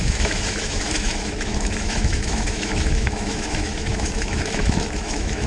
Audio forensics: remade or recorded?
remade